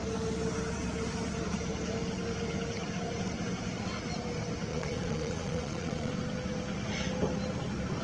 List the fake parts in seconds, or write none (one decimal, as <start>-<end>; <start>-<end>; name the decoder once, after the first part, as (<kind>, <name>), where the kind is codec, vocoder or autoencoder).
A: 4.7-6.1 (vocoder, Vocos)